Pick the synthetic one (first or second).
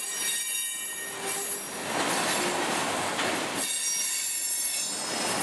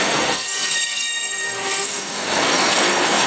second